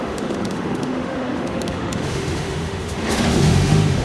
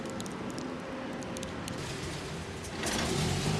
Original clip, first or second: second